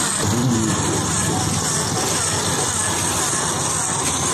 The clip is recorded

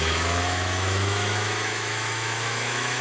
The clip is remade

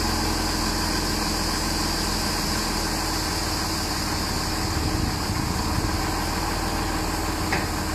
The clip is recorded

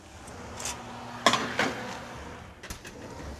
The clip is recorded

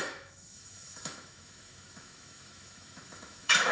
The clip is remade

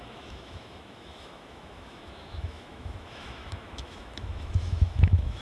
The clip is remade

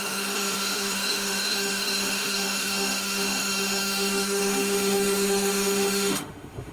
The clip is remade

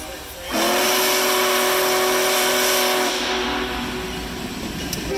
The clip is recorded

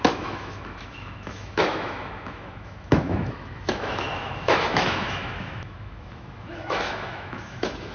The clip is remade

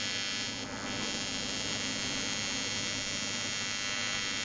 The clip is recorded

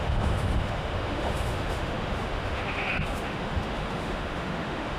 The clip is remade